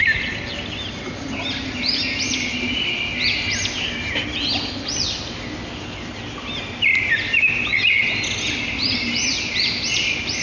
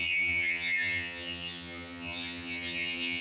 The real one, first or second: first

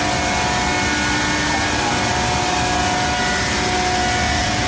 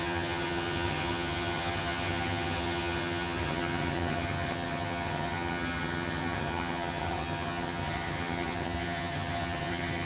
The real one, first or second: first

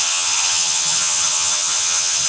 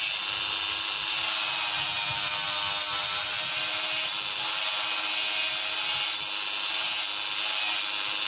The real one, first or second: second